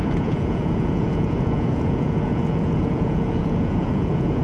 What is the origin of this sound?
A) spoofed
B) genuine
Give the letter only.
A